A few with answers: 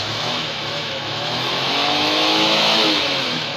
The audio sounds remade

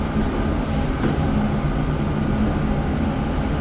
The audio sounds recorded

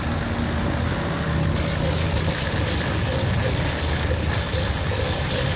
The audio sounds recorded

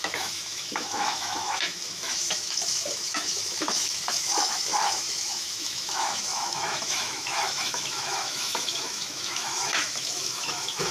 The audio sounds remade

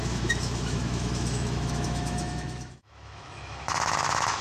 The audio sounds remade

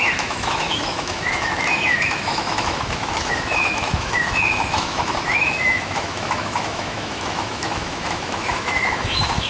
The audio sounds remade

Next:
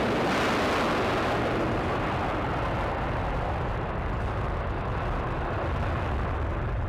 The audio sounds recorded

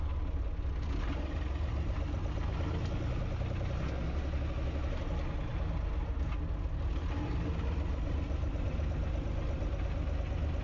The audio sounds recorded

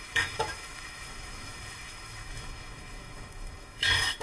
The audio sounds remade